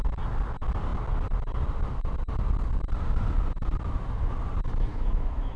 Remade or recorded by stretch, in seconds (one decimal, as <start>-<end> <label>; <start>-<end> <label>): 0.0-4.9 recorded; 4.9-5.6 remade

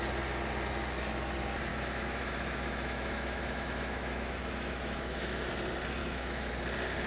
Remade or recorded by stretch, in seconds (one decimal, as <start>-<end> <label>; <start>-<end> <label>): 0.0-1.7 recorded; 1.7-5.5 remade; 5.5-6.0 recorded; 6.0-6.5 remade; 6.5-7.1 recorded

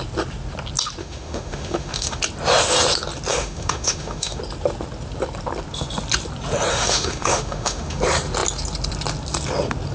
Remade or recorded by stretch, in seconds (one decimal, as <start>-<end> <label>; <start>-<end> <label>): 0.0-1.0 recorded; 1.0-2.2 remade; 2.2-3.3 recorded; 3.3-4.4 remade; 4.4-6.7 recorded; 6.7-8.0 remade; 8.0-9.9 recorded